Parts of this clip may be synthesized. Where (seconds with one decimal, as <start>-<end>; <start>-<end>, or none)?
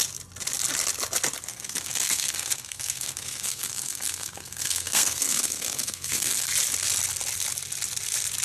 1.5-6.5